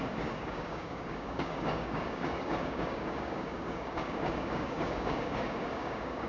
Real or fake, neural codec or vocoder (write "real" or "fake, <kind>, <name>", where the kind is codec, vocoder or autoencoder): fake, codec, DAC